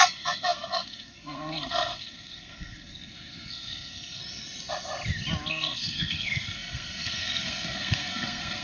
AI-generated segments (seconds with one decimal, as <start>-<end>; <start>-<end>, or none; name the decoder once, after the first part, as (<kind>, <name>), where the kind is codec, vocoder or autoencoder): 0.0-4.2 (codec, SNAC); 5.5-8.6